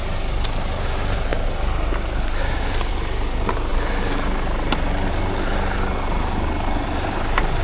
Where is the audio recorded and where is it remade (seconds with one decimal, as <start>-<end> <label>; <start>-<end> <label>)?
0.0-7.6 recorded